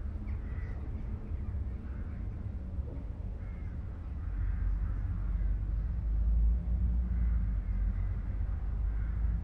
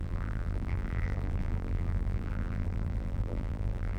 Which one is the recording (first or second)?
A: first